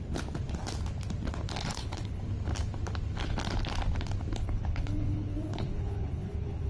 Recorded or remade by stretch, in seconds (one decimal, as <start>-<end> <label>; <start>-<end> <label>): 0.0-1.7 recorded; 1.7-2.2 remade; 2.2-4.4 recorded; 4.4-6.7 remade

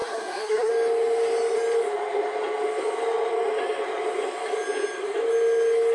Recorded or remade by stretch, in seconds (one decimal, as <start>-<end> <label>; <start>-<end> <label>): 0.0-0.7 remade; 0.7-5.9 recorded

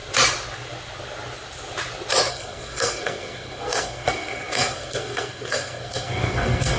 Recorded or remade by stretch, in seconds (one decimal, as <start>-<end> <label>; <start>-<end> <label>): 0.0-2.3 recorded; 2.3-6.8 remade

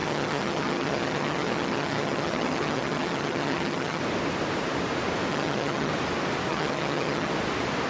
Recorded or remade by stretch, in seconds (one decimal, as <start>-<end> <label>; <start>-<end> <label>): 0.0-4.0 remade; 4.0-5.3 recorded; 5.3-5.9 remade; 5.9-6.5 recorded; 6.5-7.3 remade; 7.3-7.9 recorded

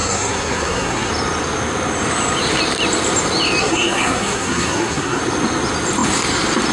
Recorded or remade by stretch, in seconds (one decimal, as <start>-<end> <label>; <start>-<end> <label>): 0.0-1.1 remade; 1.1-3.6 recorded; 3.6-5.2 remade; 5.2-6.7 recorded